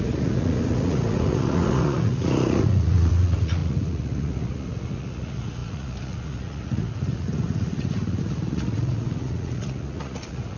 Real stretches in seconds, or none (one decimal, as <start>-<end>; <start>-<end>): none